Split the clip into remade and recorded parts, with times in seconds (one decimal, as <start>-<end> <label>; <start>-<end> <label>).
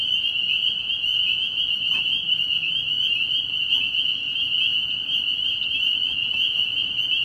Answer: 0.0-7.2 recorded